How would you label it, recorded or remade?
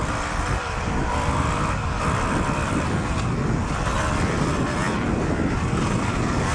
recorded